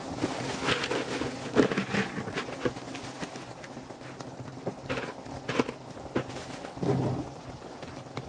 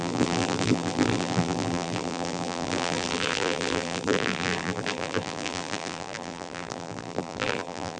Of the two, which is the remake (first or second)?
second